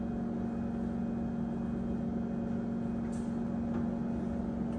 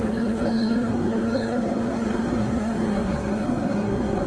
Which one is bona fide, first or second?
first